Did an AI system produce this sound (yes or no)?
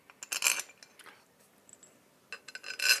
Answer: no